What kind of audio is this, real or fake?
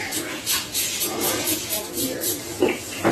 fake